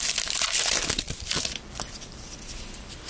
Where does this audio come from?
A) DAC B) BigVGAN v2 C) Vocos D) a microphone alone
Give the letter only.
B